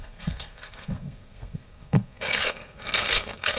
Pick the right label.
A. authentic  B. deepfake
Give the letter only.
B